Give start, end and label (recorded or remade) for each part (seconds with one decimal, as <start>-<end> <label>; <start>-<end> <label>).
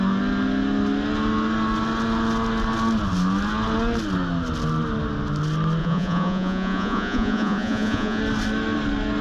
0.0-5.8 recorded; 5.8-8.2 remade; 8.2-9.2 recorded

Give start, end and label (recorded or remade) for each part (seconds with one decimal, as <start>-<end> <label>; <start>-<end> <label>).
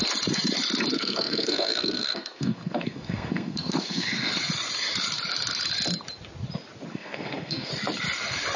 0.0-0.9 recorded; 0.9-4.3 remade; 4.3-6.9 recorded; 6.9-7.7 remade; 7.7-8.6 recorded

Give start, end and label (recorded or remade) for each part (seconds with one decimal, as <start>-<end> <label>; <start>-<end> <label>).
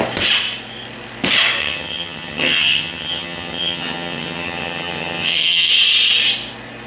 0.0-1.6 recorded; 1.6-5.7 remade; 5.7-6.9 recorded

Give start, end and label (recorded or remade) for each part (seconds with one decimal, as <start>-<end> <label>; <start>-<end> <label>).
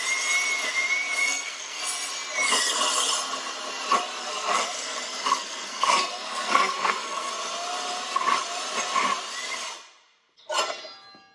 0.0-1.2 recorded; 1.2-1.8 remade; 1.8-4.2 recorded; 4.2-7.3 remade; 7.3-11.3 recorded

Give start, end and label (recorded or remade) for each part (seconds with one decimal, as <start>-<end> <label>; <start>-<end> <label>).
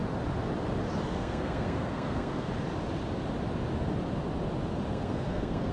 0.0-1.1 recorded; 1.1-2.5 remade; 2.5-4.9 recorded; 4.9-5.7 remade